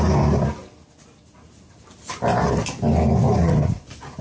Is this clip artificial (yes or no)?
no